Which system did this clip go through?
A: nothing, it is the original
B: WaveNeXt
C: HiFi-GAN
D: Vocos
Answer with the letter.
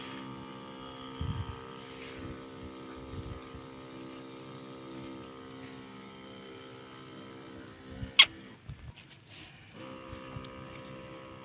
A